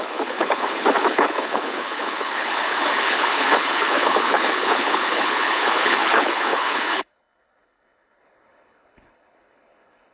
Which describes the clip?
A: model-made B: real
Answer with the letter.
A